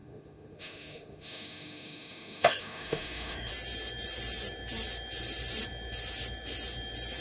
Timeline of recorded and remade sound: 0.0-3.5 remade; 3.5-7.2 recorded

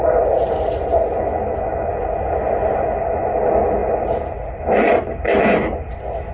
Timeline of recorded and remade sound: 0.0-1.3 recorded; 1.3-1.9 remade; 1.9-6.3 recorded

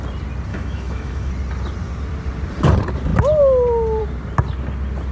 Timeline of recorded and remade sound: 0.0-0.5 recorded; 0.5-1.3 remade; 1.3-5.1 recorded

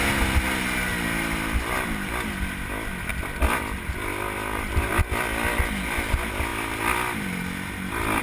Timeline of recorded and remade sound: 0.0-8.2 recorded